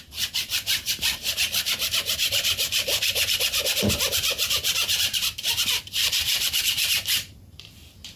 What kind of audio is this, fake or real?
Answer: fake